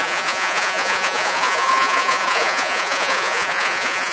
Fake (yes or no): yes